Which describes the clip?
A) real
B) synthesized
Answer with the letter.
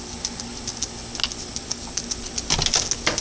A